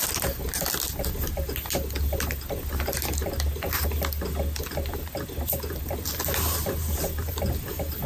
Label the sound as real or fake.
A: real